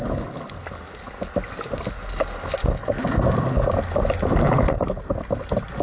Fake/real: real